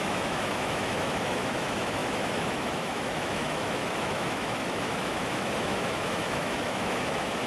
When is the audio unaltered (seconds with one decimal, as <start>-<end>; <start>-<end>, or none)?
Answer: none